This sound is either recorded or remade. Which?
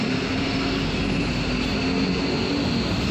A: recorded